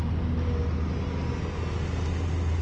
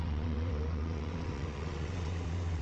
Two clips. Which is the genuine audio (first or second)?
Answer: first